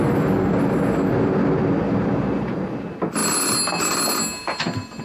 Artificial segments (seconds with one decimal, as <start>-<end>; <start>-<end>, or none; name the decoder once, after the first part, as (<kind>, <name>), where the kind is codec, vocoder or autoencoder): none